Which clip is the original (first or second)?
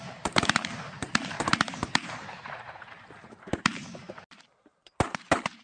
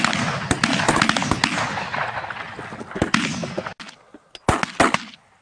second